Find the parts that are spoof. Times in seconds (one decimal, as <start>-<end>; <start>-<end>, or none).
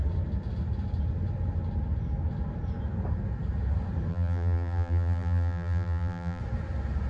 4.1-6.4